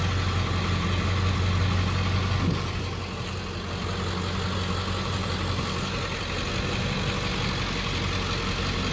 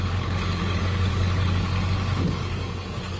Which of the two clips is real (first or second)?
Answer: first